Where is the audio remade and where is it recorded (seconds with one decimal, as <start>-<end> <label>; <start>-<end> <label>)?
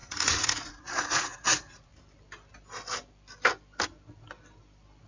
0.0-1.9 remade; 1.9-5.1 recorded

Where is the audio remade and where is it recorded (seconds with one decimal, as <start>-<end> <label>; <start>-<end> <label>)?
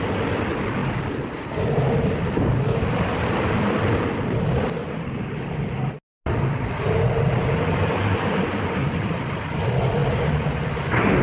0.0-0.8 recorded; 0.8-5.9 remade; 5.9-11.2 recorded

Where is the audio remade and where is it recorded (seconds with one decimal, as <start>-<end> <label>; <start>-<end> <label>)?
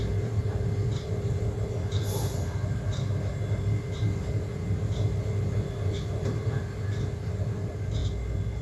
0.0-8.6 recorded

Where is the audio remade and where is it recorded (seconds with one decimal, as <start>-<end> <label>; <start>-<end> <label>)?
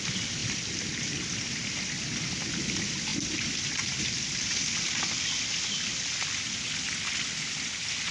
0.0-8.1 recorded